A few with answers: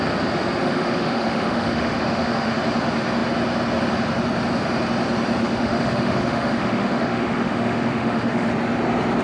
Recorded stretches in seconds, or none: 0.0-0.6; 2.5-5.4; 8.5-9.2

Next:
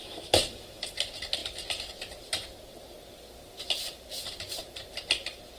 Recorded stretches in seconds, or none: 0.9-5.6

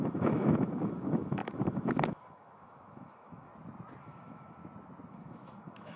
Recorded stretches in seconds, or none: 3.5-4.0; 4.6-5.1

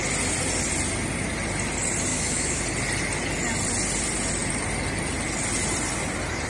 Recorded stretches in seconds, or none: 0.0-2.1; 2.6-6.5

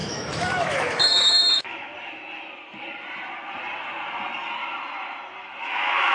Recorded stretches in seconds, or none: 1.9-5.6